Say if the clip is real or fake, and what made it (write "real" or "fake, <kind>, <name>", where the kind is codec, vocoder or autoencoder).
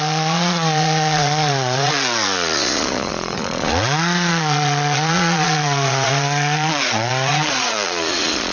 fake, vocoder, Vocos